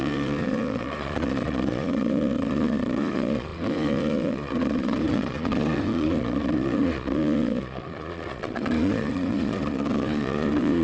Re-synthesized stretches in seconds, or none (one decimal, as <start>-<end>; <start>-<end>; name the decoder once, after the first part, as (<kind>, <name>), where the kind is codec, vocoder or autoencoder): 0.0-10.8 (vocoder, Vocos)